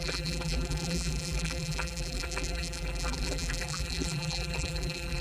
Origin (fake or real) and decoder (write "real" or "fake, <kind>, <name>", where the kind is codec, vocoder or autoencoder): fake, vocoder, BigVGAN v2